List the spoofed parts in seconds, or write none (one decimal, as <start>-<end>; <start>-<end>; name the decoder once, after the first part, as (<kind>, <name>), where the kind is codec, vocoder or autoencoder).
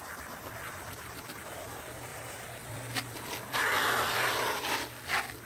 2.1-2.7 (vocoder, BigVGAN v2)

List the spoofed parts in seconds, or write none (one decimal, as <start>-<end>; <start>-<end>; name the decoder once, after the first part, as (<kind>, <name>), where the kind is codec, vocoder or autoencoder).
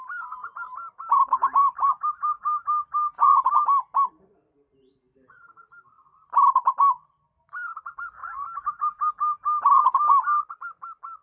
0.4-1.1 (vocoder, BigVGAN v2); 1.6-2.6; 8.2-9.1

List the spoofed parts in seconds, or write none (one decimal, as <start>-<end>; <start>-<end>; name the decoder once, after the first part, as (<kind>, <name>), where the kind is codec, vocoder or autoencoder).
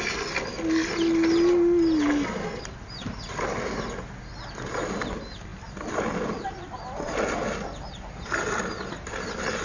none